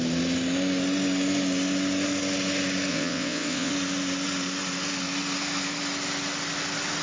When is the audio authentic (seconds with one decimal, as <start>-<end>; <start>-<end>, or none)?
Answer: 0.0-2.9; 3.7-7.0